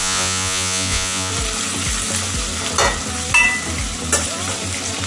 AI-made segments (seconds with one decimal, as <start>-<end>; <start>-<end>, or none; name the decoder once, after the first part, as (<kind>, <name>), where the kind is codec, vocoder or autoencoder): 0.0-1.3 (vocoder, Vocos)